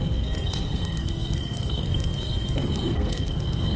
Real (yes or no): no